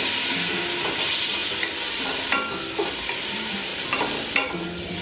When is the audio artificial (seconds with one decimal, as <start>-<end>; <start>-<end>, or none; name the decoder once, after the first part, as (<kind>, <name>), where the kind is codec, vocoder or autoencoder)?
none